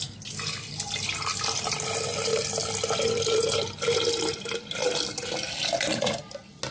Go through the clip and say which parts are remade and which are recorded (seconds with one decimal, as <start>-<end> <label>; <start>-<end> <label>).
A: 0.0-6.7 recorded

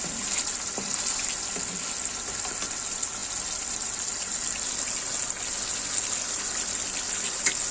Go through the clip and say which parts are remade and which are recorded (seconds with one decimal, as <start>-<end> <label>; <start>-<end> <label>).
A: 0.0-7.7 recorded

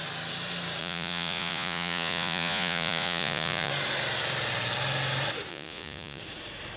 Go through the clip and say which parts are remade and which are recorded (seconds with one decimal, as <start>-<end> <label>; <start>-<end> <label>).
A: 0.0-0.8 recorded; 0.8-3.7 remade; 3.7-5.5 recorded; 5.5-6.2 remade; 6.2-6.8 recorded

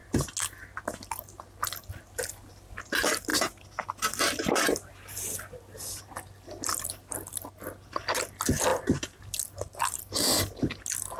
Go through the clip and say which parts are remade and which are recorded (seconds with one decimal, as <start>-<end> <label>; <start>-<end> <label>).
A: 0.0-11.2 recorded

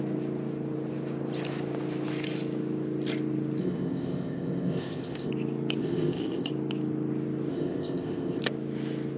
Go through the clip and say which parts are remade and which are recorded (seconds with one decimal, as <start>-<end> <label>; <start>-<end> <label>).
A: 0.0-3.6 recorded; 3.6-5.3 remade; 5.3-5.8 recorded; 5.8-6.5 remade; 6.5-7.5 recorded; 7.5-8.4 remade; 8.4-9.2 recorded

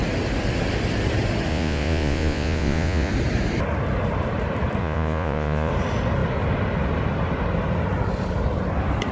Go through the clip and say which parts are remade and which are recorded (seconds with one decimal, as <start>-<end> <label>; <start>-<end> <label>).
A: 0.0-1.5 recorded; 1.5-3.1 remade; 3.1-4.8 recorded; 4.8-5.7 remade; 5.7-9.1 recorded

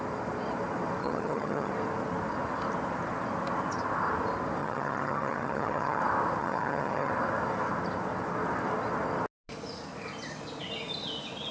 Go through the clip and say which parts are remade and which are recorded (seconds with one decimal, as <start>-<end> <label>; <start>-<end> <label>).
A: 0.0-1.0 recorded; 1.0-1.7 remade; 1.7-4.6 recorded; 4.6-6.0 remade; 6.0-6.4 recorded; 6.4-7.1 remade; 7.1-11.5 recorded

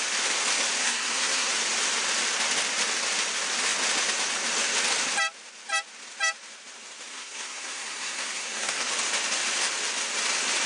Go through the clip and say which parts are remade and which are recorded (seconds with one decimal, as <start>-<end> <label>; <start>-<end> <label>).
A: 0.0-0.8 recorded; 0.8-1.5 remade; 1.5-7.1 recorded; 7.1-8.9 remade; 8.9-10.7 recorded